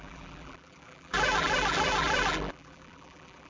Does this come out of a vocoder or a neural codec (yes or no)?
yes